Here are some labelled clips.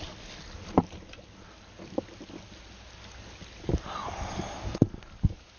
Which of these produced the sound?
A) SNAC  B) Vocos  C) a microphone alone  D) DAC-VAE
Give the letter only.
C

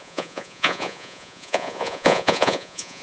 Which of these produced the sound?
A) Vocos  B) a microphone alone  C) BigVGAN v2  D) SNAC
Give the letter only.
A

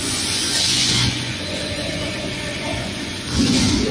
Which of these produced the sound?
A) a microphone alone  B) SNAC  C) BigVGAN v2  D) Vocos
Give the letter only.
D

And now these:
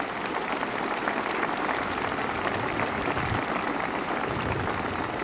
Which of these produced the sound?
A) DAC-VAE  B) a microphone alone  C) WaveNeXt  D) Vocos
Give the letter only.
B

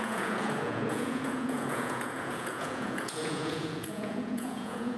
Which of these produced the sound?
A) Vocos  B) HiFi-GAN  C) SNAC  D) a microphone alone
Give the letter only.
A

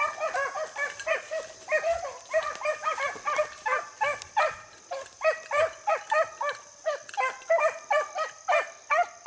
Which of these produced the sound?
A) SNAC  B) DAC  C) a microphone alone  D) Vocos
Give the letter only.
C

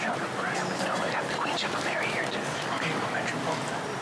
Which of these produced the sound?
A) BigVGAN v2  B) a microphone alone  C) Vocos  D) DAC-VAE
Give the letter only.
B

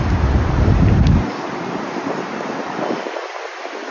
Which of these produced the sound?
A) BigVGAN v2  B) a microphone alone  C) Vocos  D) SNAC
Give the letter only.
B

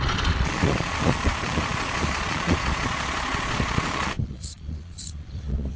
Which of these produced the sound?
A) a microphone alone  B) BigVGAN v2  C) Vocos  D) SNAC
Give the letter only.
C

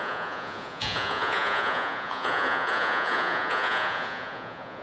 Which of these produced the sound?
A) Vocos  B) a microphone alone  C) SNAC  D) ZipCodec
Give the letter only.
A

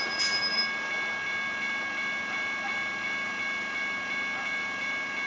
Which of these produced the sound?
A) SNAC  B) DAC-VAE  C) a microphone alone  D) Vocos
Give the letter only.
C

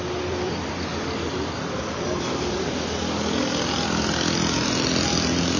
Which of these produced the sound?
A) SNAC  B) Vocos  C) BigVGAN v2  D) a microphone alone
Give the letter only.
D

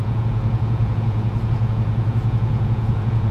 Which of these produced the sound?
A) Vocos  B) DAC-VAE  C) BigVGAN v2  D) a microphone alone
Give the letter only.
A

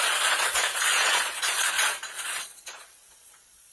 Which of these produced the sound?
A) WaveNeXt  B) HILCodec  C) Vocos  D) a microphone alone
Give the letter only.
C